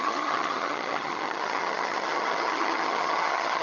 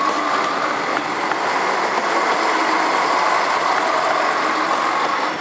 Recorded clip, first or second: second